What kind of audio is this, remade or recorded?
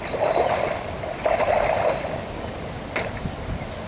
recorded